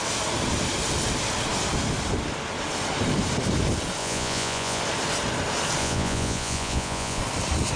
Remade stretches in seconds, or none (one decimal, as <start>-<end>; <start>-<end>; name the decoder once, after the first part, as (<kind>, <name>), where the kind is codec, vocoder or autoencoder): 4.0-4.8 (vocoder, Vocos); 5.8-7.2